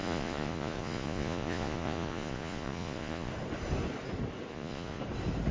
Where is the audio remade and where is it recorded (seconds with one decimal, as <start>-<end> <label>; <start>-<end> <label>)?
0.0-3.3 remade; 3.3-4.5 recorded; 4.5-5.0 remade; 5.0-5.5 recorded